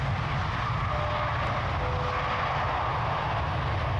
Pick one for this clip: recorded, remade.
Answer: recorded